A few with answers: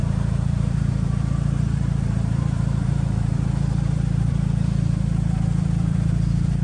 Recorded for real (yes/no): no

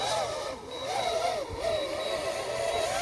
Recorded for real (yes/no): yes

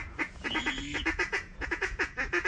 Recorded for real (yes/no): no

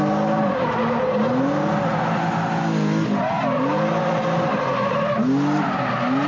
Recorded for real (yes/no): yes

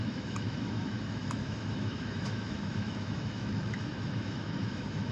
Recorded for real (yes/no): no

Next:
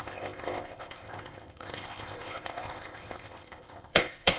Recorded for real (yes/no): no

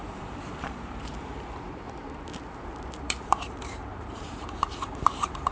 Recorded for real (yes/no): no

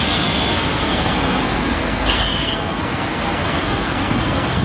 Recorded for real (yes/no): no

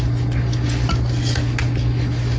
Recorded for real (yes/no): yes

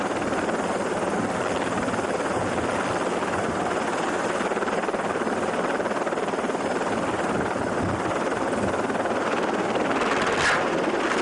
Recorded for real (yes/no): yes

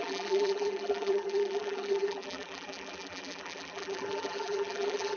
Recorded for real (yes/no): no